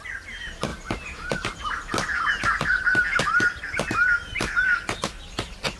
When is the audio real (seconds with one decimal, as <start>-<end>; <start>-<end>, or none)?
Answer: 0.0-5.8